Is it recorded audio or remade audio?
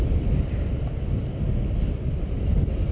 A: recorded